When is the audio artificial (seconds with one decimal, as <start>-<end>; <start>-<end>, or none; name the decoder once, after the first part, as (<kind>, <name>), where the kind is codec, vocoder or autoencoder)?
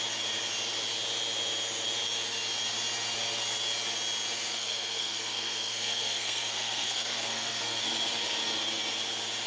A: 4.5-7.8 (codec, SNAC)